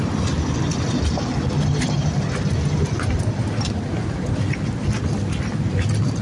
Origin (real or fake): real